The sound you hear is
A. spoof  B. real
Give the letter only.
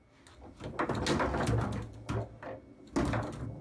B